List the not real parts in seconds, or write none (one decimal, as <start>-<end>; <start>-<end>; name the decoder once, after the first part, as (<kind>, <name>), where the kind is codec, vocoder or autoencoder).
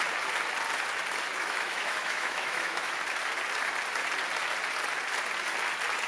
1.4-2.9 (autoencoder, DAC-VAE)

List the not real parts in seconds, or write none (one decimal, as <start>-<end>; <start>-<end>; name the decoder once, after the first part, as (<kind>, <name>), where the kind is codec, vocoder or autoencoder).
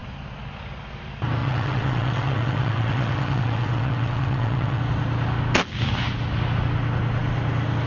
1.4-4.8 (vocoder, WaveNeXt)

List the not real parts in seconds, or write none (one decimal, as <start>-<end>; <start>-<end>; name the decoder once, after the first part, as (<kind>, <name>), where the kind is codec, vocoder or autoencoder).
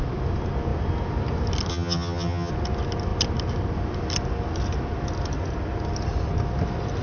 1.7-2.5 (vocoder, HiFi-GAN)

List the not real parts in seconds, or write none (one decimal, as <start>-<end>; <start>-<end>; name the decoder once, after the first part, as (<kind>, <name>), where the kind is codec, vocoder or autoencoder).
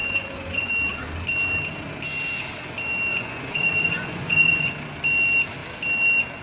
0.0-0.7 (vocoder, Vocos); 3.1-4.7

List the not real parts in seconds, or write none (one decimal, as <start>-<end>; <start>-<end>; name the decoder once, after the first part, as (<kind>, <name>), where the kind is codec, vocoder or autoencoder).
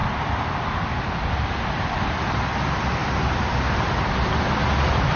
none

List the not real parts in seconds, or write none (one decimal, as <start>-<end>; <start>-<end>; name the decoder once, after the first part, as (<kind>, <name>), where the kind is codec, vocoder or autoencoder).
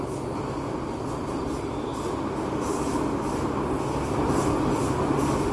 none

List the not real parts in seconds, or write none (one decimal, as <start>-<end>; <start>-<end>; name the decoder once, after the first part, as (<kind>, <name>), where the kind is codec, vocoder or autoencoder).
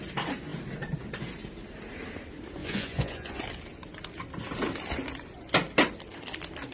2.6-3.4 (vocoder, Vocos)